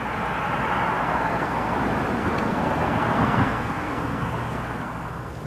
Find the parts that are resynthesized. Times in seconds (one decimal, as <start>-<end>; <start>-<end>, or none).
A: 1.0-1.8; 2.2-5.5